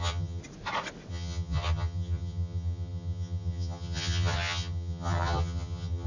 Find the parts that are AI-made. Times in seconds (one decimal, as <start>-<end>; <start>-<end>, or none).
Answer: 0.0-0.4; 1.1-6.1